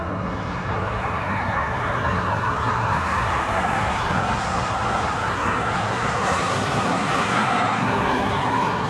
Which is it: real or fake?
fake